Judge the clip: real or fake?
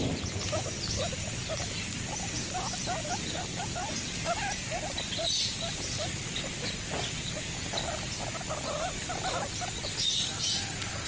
fake